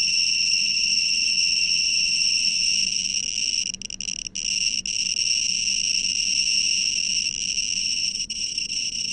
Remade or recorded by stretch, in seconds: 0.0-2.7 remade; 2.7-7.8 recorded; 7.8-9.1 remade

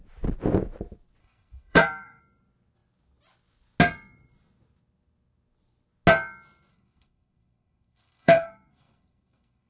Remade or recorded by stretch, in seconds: 0.0-1.2 recorded; 1.2-2.2 remade; 2.2-6.7 recorded; 6.7-9.7 remade

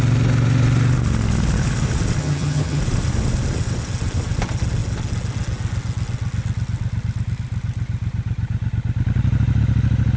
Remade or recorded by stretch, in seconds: 0.0-2.2 recorded; 2.2-2.8 remade; 2.8-10.2 recorded

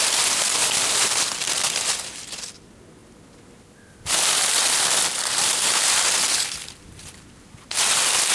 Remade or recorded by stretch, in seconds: 0.0-8.3 recorded

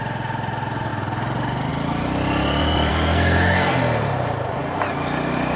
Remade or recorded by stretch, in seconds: 0.0-2.9 recorded; 2.9-3.8 remade; 3.8-5.6 recorded

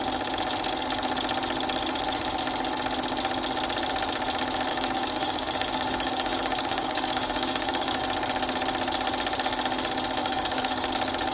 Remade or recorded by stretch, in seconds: 0.0-4.7 recorded; 4.7-8.0 remade; 8.0-10.2 recorded; 10.2-10.9 remade; 10.9-11.3 recorded

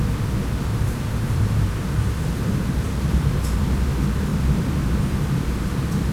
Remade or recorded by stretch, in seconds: 0.0-0.7 recorded; 0.7-3.6 remade; 3.6-4.3 recorded; 4.3-6.1 remade